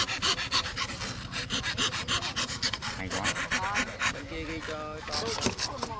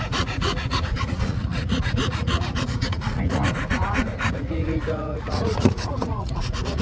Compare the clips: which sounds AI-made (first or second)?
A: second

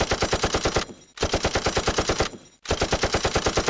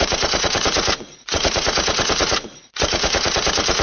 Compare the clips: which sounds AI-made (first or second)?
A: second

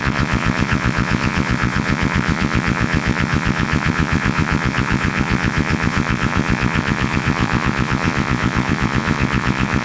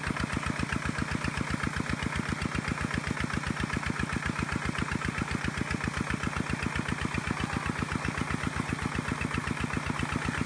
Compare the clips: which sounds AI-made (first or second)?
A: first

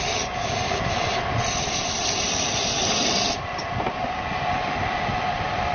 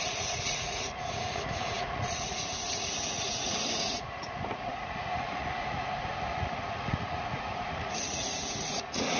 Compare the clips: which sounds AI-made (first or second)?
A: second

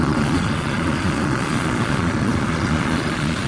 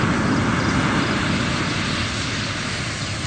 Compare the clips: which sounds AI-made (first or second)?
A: first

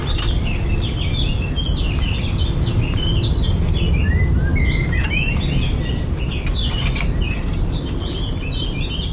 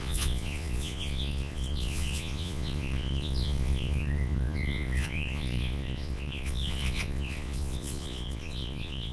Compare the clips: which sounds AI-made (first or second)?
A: second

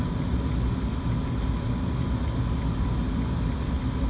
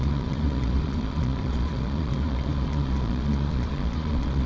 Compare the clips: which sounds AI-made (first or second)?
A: second